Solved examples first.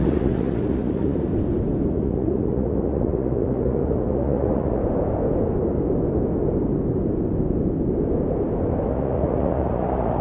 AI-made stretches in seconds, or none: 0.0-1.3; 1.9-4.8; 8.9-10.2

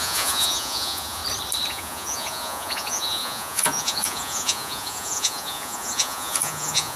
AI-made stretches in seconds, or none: 0.0-1.2; 1.7-7.0

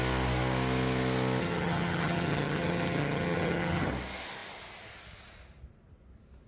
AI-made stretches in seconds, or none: 1.4-3.9

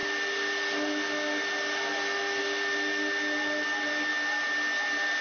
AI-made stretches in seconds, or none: none

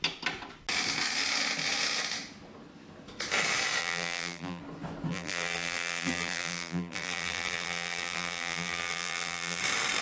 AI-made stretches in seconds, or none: 3.8-4.6; 5.1-9.6

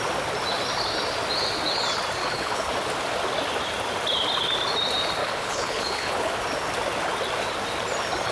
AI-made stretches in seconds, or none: 2.2-2.7; 5.2-6.3